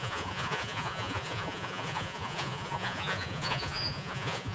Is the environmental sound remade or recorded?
remade